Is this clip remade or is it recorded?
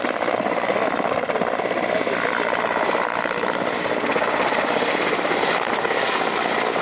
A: recorded